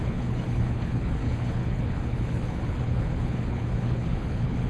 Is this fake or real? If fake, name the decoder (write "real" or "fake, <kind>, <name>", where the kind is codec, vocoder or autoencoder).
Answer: fake, codec, HILCodec